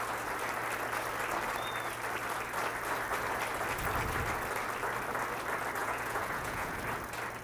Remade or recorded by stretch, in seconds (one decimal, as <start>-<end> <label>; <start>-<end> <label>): 0.0-5.8 recorded; 5.8-6.8 remade; 6.8-7.4 recorded